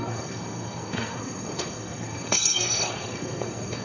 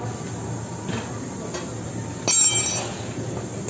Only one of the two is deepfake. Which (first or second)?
first